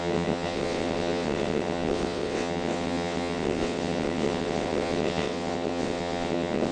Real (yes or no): no